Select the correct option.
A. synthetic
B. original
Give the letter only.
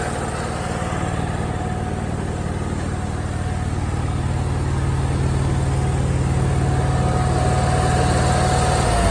B